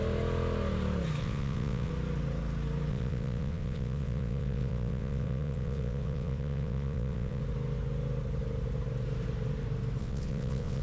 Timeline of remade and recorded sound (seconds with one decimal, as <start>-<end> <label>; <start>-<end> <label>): 0.0-1.2 recorded; 1.2-1.9 remade; 1.9-2.9 recorded; 2.9-7.4 remade; 7.4-10.0 recorded; 10.0-10.8 remade